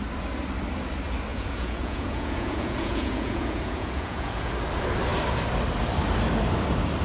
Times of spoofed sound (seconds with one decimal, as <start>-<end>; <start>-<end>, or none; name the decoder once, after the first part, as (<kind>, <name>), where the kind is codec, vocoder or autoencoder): 1.3-4.5 (vocoder, Vocos)